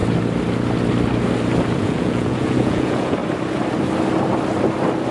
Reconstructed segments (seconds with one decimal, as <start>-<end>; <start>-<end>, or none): 1.8-3.2